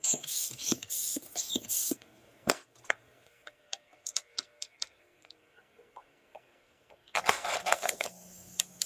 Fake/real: fake